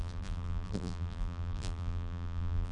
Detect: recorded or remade remade